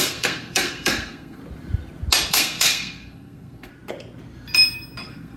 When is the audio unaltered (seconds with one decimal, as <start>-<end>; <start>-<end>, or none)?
1.4-2.3; 3.7-5.0